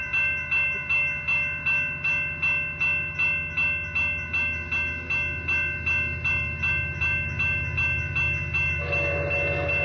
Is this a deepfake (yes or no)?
no